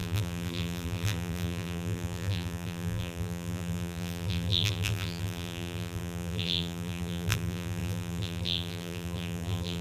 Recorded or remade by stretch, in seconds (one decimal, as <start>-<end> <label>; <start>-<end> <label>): 0.0-9.8 remade